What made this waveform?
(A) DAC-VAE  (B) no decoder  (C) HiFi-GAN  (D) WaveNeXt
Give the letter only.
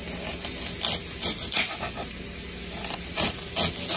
B